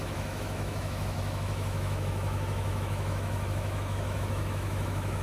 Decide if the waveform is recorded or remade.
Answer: remade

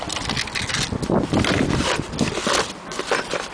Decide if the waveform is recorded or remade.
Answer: remade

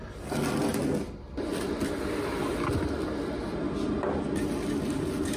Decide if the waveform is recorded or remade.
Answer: recorded